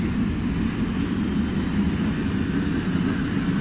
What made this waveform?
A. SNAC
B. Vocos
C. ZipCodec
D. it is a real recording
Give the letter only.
D